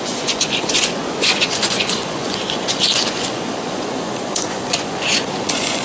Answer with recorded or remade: remade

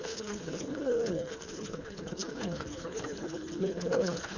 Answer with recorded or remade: remade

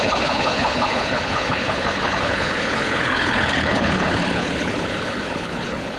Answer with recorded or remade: remade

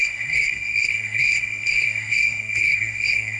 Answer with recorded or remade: remade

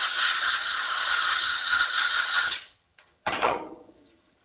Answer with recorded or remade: remade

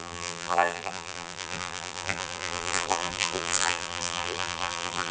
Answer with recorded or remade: remade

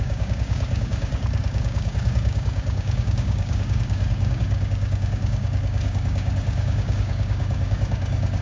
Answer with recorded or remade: remade